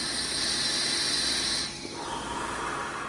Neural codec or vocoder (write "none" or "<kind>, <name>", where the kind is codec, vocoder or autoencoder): none